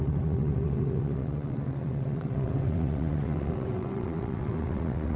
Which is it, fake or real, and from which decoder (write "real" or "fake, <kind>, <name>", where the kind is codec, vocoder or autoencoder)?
fake, vocoder, WaveNeXt